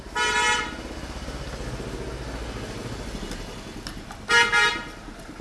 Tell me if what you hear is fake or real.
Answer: real